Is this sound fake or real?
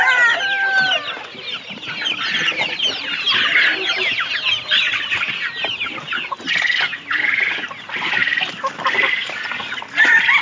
real